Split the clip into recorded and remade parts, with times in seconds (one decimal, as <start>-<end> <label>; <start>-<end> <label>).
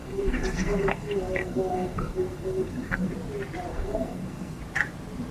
0.0-3.1 remade; 3.1-3.7 recorded; 3.7-4.6 remade; 4.6-5.3 recorded